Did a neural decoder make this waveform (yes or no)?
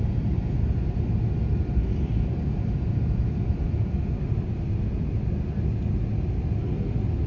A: no